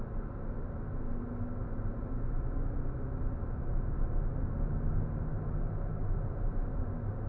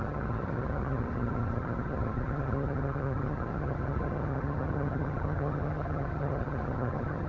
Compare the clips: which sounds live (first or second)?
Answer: first